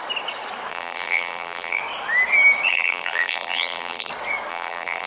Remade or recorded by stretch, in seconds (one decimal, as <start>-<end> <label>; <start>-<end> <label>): 0.0-0.7 recorded; 0.7-1.8 remade; 1.8-2.7 recorded; 2.7-4.1 remade; 4.1-4.5 recorded; 4.5-5.1 remade